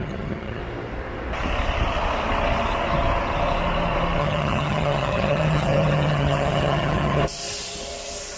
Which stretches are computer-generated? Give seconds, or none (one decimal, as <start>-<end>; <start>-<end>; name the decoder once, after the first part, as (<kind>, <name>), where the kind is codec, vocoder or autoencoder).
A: 0.0-0.6 (vocoder, HiFi-GAN); 4.2-7.2